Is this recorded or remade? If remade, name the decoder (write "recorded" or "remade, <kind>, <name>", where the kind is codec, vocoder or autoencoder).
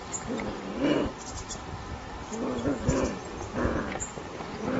recorded